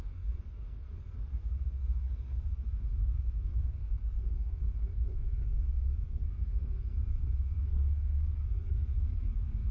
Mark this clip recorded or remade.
remade